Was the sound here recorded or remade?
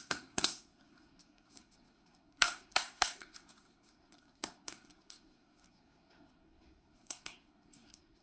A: remade